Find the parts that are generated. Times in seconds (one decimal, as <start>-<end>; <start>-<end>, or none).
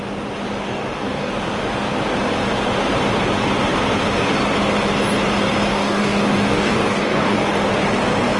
0.7-1.3; 5.7-7.7